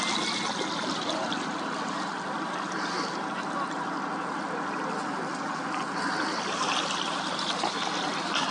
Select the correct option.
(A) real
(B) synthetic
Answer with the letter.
A